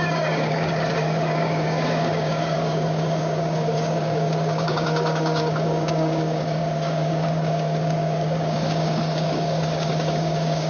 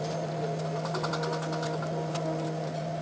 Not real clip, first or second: first